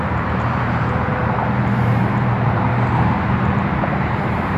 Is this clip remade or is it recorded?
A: remade